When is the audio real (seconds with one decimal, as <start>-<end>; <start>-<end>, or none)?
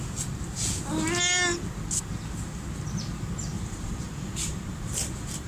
0.0-3.5